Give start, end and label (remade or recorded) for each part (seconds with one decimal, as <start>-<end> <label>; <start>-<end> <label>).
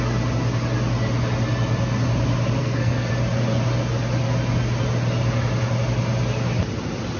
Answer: 0.0-2.6 recorded; 2.6-3.1 remade; 3.1-7.2 recorded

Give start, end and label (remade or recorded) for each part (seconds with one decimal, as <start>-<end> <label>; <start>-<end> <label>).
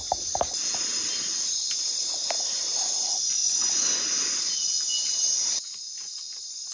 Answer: 0.0-6.7 recorded